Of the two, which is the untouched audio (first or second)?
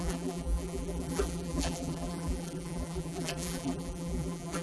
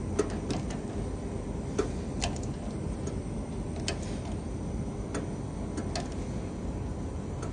second